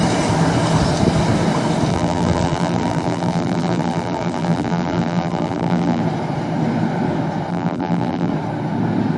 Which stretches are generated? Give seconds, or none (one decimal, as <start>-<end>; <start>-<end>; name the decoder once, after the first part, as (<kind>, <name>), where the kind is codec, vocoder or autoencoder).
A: 1.9-6.0 (vocoder, BigVGAN v2); 7.5-8.3